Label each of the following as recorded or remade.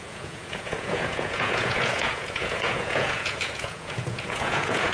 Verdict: remade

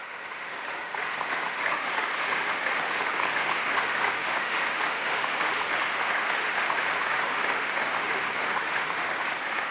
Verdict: remade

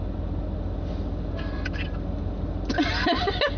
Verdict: recorded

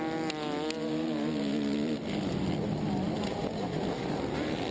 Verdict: recorded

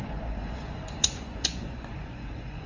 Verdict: remade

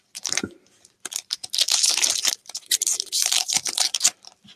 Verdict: remade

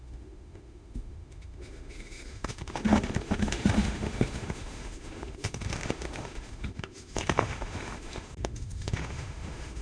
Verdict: remade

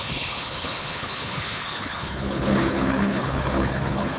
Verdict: remade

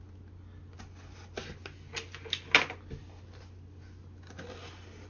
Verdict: recorded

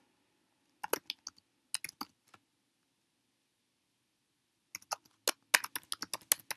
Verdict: recorded